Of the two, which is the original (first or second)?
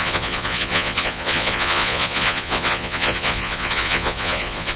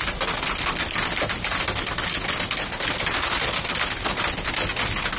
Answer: second